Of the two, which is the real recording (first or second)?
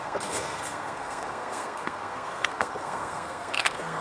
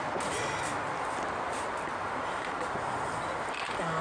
second